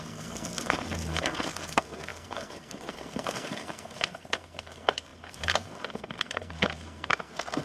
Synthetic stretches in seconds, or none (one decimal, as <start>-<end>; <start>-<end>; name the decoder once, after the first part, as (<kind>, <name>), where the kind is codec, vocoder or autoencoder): 0.0-7.6 (codec, SNAC)